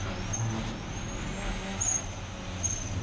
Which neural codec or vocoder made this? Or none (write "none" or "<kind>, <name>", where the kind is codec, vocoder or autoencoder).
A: none